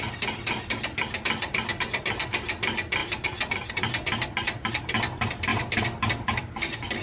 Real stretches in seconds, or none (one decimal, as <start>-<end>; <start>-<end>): 0.0-7.0